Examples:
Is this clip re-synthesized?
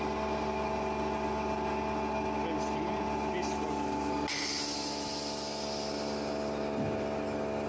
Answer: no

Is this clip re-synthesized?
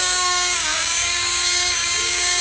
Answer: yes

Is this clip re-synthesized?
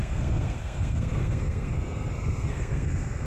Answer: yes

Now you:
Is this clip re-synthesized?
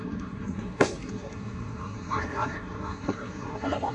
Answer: yes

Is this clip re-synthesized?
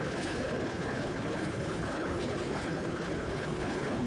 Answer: yes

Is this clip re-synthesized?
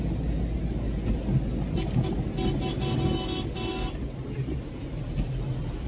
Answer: no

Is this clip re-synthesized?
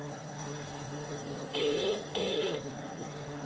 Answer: yes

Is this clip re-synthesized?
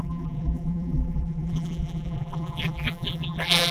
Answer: yes